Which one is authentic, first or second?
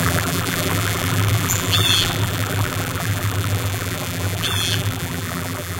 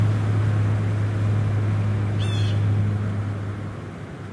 second